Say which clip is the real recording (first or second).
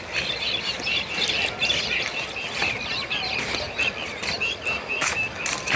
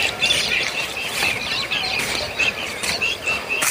first